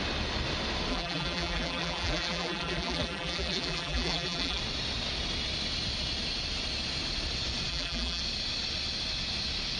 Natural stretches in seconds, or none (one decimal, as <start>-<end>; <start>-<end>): 0.0-0.9; 4.6-7.7; 8.2-9.8